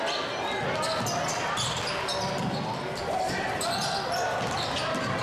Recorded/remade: recorded